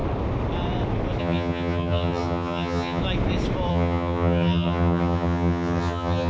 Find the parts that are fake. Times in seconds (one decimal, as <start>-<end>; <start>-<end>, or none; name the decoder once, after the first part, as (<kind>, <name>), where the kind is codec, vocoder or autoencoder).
1.2-3.0 (vocoder, HiFi-GAN); 3.7-6.3

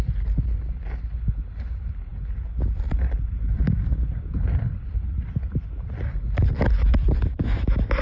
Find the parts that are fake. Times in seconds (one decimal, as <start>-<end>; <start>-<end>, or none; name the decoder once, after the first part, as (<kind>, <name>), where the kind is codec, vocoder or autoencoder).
none

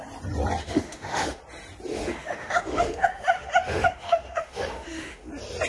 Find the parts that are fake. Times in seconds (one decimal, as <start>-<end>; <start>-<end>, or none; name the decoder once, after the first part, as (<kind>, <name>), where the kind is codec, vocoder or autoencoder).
0.6-1.4 (autoencoder, DAC-VAE); 1.9-5.3

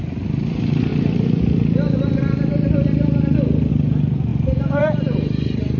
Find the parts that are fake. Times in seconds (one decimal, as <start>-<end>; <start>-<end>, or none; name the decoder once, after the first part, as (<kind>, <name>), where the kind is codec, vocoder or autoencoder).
0.0-0.9 (vocoder, BigVGAN v2); 3.7-5.8

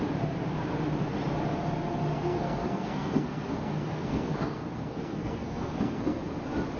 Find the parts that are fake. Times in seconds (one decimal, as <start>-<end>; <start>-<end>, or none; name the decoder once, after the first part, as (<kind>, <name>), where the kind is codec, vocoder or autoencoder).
2.1-6.2 (codec, SNAC)

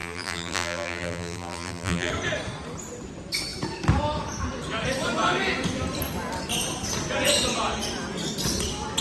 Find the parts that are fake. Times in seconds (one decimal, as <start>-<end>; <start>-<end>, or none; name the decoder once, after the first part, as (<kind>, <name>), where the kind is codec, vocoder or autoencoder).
0.0-2.1 (vocoder, BigVGAN v2)

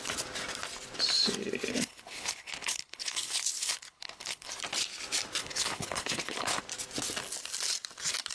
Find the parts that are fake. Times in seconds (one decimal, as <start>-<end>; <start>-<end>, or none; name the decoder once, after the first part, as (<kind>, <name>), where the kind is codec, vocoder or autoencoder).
1.7-4.5 (codec, HILCodec); 5.4-6.6